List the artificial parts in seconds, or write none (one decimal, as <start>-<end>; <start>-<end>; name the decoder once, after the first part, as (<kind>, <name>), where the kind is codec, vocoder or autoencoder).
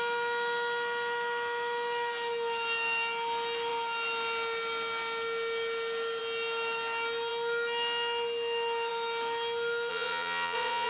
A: 9.9-10.9 (vocoder, Vocos)